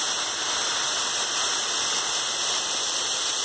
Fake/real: real